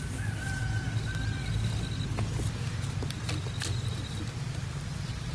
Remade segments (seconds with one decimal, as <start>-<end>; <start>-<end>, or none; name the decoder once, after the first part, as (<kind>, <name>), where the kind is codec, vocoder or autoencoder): none